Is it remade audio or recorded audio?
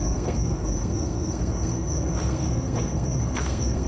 remade